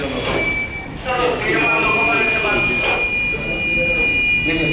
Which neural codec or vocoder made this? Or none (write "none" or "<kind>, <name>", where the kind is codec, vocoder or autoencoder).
none